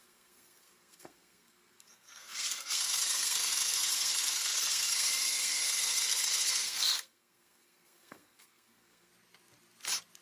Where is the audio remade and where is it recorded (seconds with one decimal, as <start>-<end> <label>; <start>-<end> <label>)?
0.0-9.1 remade; 9.1-10.2 recorded